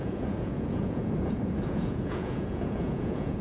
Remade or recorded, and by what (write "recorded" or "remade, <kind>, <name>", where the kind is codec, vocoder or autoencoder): remade, vocoder, Vocos